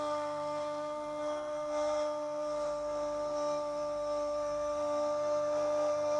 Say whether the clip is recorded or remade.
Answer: remade